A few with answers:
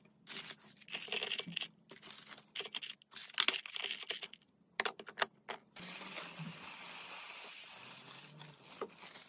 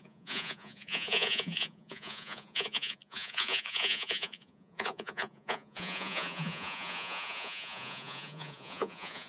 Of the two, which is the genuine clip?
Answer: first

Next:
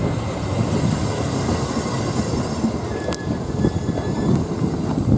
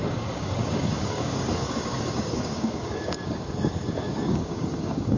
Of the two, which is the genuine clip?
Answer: first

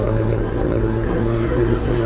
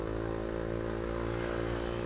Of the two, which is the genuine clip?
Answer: second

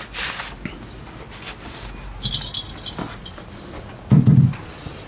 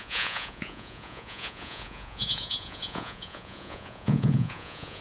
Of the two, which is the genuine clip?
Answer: first